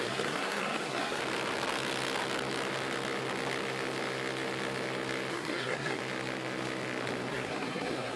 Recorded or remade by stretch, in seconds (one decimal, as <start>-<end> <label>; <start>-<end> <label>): 0.0-1.2 remade; 1.2-5.3 recorded; 5.3-6.0 remade; 6.0-7.3 recorded; 7.3-8.2 remade